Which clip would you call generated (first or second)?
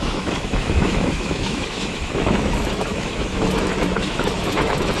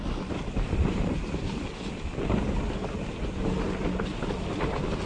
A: first